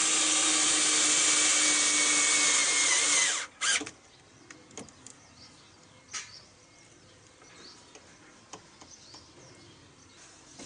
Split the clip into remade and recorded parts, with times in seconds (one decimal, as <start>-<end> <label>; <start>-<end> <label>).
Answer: 0.0-10.7 recorded